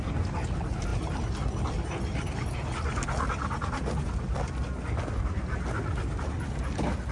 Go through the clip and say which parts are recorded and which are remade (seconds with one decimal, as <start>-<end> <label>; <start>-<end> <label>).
0.0-7.1 recorded